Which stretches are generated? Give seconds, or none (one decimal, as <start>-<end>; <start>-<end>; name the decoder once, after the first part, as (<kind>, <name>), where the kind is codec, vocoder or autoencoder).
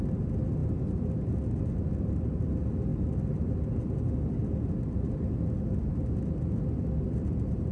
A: none